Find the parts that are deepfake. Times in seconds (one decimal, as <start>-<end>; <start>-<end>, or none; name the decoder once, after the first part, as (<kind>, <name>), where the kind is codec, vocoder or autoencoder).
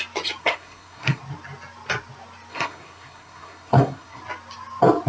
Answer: 0.4-1.2 (codec, SNAC); 2.5-4.2